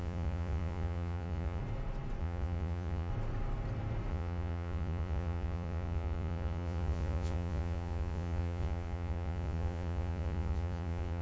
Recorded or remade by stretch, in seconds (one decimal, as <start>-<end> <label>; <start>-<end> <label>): 0.0-1.6 remade; 1.6-2.2 recorded; 2.2-3.1 remade; 3.1-4.1 recorded; 4.1-11.2 remade